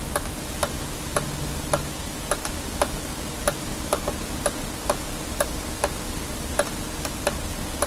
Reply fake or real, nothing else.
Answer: real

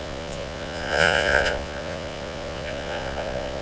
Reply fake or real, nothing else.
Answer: fake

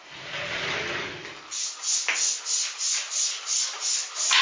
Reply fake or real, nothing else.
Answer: real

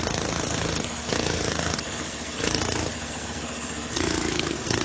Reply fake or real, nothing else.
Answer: fake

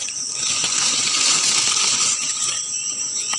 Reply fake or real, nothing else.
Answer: fake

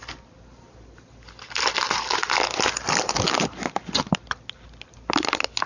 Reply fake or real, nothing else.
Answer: real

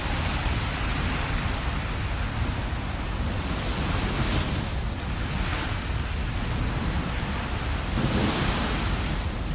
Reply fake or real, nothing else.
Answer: real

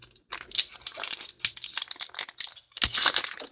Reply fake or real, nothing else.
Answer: real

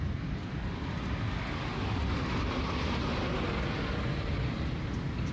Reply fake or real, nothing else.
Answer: real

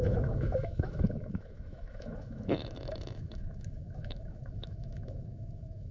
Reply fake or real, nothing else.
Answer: fake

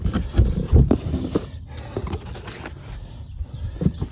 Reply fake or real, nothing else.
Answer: real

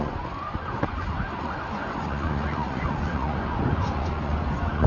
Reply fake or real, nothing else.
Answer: fake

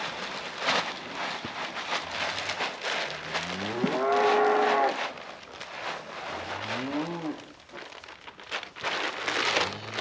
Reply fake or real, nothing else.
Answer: real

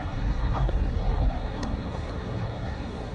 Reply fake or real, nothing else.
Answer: fake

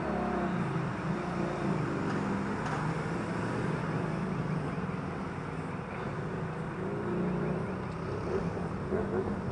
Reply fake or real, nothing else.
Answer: real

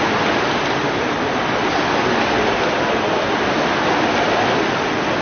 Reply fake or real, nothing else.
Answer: real